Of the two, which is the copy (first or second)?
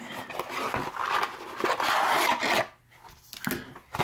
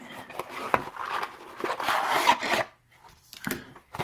second